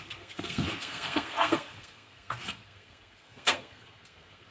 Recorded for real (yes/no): no